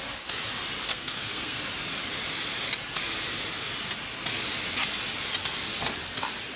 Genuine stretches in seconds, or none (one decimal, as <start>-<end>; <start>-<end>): 0.0-0.9; 1.6-6.6